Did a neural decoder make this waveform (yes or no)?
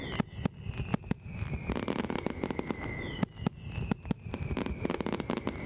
no